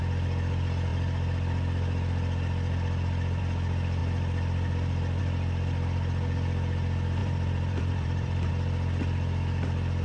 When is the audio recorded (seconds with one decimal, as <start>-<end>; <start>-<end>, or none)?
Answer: 0.0-7.2; 8.5-10.0